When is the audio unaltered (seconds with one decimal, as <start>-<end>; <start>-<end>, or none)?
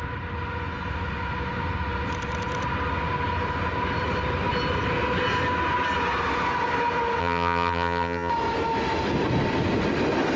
0.0-7.2; 8.3-10.4